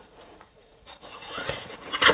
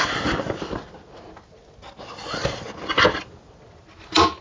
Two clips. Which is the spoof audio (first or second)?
first